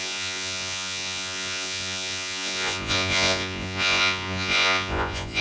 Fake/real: fake